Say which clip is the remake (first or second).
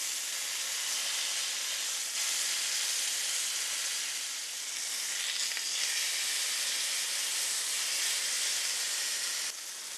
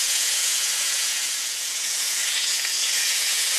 second